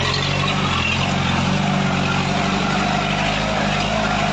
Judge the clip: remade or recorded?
recorded